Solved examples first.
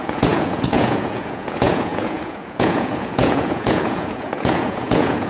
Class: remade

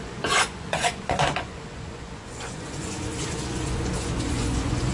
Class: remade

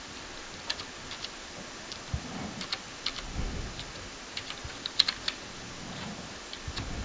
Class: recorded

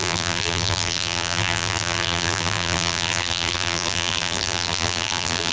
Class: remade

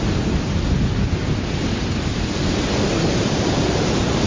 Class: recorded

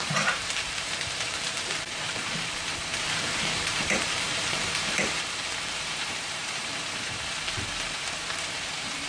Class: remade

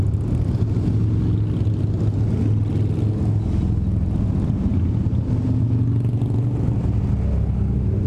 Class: recorded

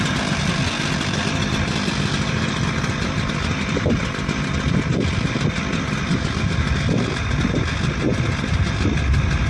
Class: recorded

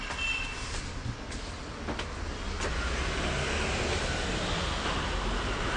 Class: recorded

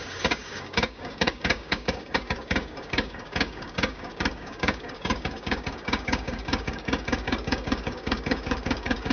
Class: remade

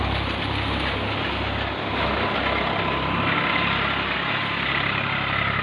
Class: recorded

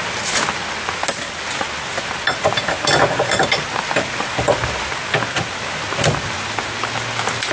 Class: recorded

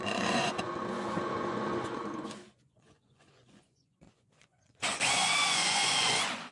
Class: remade